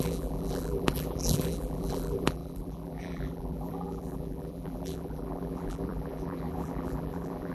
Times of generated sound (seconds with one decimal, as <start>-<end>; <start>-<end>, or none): 0.0-7.5